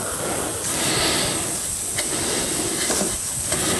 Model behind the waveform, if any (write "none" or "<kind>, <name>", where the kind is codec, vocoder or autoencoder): none